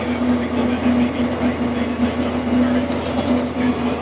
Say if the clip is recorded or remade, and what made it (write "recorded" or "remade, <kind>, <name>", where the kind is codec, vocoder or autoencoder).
recorded